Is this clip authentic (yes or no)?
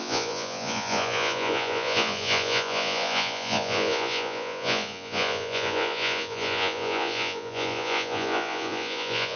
no